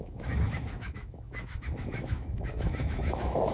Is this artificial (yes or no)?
yes